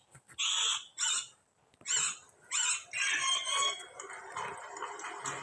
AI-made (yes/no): no